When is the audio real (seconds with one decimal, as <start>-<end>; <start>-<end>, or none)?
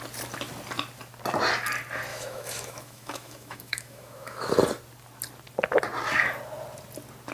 0.0-2.1; 4.5-7.3